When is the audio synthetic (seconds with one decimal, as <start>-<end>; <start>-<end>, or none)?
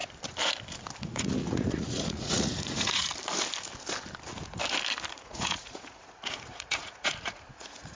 1.0-3.1; 5.1-7.9